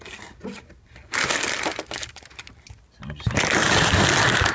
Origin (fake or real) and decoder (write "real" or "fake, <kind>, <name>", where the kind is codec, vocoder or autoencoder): real